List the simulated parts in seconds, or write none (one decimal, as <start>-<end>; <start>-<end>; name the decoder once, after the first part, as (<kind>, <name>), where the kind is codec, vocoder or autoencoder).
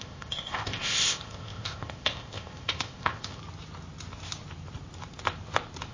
0.0-3.4 (codec, ZipCodec)